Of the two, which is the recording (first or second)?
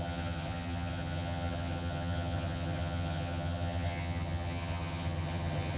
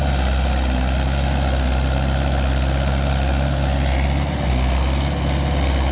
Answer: second